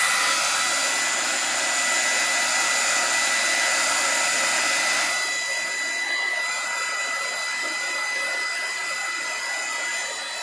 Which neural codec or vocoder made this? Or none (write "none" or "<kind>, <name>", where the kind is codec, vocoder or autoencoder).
none